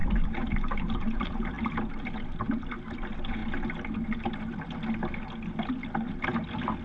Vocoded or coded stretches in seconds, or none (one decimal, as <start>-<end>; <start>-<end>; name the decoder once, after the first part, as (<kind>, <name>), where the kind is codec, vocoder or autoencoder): 0.0-1.8 (vocoder, BigVGAN v2)